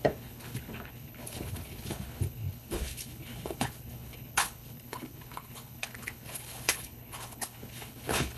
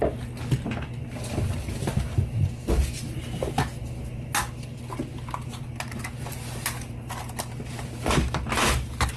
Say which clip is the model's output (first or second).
first